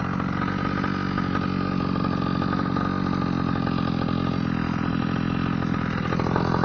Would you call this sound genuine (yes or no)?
yes